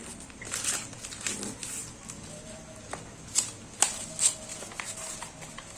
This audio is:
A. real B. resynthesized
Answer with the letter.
A